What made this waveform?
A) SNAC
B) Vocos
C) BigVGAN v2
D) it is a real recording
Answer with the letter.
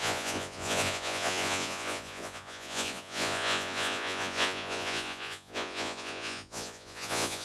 B